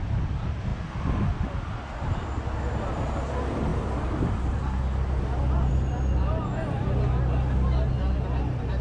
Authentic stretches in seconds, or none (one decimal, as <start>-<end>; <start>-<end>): 0.0-8.8